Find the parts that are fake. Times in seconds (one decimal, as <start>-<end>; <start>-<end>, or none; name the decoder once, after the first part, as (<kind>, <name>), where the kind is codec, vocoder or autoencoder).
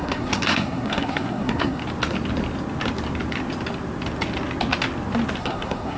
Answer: 0.0-1.8 (codec, SNAC); 5.4-6.0